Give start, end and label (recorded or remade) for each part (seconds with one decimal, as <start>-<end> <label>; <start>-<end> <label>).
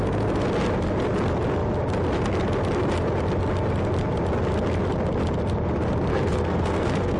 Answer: 0.0-6.1 recorded; 6.1-7.2 remade